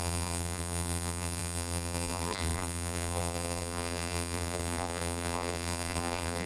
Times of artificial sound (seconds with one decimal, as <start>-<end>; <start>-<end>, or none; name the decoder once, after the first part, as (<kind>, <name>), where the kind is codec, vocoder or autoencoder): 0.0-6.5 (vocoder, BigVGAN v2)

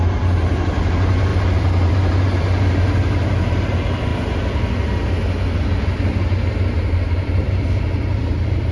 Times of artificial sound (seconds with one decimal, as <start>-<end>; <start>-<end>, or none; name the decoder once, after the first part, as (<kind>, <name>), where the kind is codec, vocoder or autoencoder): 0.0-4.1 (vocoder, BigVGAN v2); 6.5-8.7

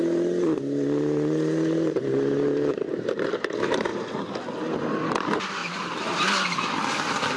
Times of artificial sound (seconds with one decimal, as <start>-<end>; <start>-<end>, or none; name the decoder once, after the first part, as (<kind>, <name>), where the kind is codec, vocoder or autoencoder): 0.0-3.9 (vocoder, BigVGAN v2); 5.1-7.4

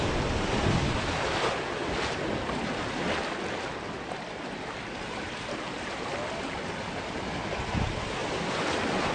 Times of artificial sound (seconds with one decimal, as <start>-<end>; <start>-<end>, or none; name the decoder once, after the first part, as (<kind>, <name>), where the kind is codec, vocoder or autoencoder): 0.0-1.8 (vocoder, BigVGAN v2); 6.8-9.1